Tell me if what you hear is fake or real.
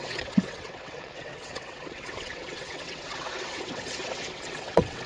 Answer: fake